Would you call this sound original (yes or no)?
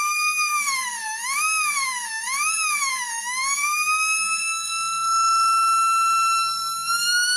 no